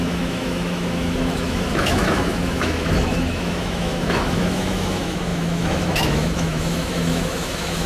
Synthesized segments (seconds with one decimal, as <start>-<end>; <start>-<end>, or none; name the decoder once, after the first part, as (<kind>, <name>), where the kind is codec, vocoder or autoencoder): 0.0-7.9 (autoencoder, DAC-VAE)